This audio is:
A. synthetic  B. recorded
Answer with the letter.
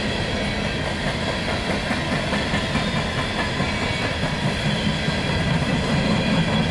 B